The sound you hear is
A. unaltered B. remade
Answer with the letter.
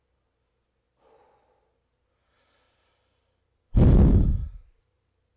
A